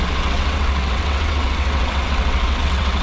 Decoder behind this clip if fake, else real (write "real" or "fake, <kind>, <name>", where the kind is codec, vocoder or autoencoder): fake, vocoder, WaveNeXt